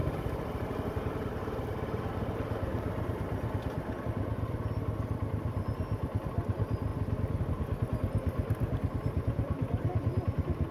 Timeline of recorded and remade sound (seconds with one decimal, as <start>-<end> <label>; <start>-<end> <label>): 0.0-10.7 recorded

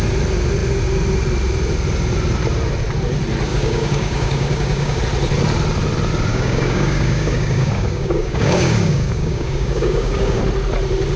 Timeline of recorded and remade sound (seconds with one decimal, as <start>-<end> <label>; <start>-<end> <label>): 0.0-3.5 recorded; 3.5-5.0 remade; 5.0-6.3 recorded; 6.3-10.4 remade; 10.4-11.2 recorded

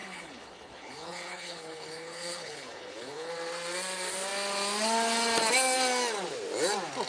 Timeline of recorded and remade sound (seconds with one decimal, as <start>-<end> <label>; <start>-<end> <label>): 0.0-3.3 remade; 3.3-7.1 recorded